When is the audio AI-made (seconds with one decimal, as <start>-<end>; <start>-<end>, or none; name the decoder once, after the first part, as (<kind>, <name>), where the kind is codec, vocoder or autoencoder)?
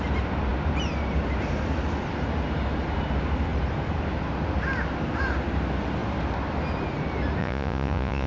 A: 7.4-8.3 (vocoder, Vocos)